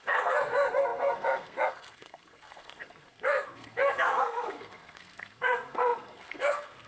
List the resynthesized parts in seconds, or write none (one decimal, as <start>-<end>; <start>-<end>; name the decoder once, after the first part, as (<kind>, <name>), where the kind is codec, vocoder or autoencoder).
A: 0.0-6.9 (codec, SNAC)